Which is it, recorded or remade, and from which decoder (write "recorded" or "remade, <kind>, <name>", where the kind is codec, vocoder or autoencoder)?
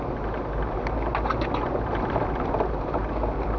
recorded